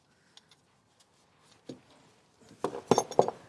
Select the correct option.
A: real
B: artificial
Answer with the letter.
A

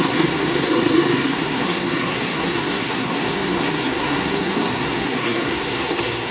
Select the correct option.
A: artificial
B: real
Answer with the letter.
A